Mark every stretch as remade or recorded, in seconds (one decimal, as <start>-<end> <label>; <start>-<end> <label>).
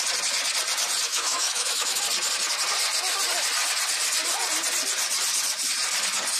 0.0-1.1 recorded; 1.1-2.0 remade; 2.0-6.4 recorded